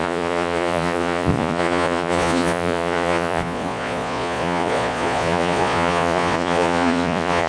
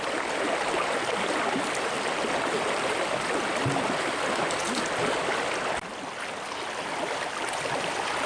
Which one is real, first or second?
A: second